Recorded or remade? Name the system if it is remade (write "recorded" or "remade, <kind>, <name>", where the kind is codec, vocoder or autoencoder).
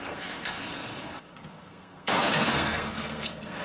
remade, codec, SNAC